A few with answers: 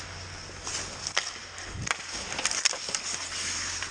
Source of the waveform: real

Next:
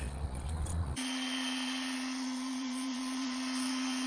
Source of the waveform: fake